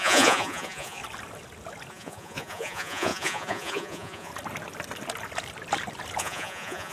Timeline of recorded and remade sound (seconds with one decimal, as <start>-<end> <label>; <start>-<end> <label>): 0.0-1.0 remade; 1.0-1.9 recorded; 1.9-4.3 remade; 4.3-6.2 recorded; 6.2-6.9 remade